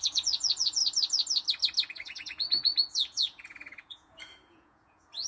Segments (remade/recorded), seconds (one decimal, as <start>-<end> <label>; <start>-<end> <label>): 0.0-0.8 remade; 0.8-1.9 recorded; 1.9-5.3 remade